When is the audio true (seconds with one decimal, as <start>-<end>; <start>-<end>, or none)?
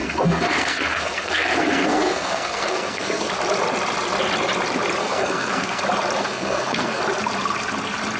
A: 3.3-5.0; 5.8-6.2; 7.0-8.2